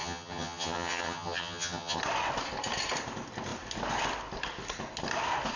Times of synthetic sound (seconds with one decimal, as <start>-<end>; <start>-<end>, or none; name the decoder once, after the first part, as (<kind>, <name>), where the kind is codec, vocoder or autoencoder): 0.0-2.0 (vocoder, HiFi-GAN)